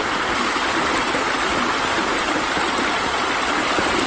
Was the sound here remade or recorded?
recorded